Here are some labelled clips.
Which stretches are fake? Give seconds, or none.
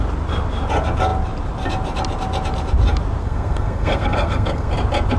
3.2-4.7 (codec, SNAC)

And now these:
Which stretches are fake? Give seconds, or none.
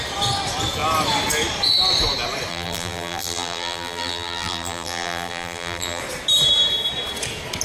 2.5-6.0 (vocoder, BigVGAN v2)